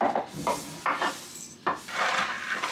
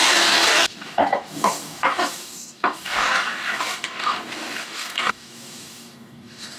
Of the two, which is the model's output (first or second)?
second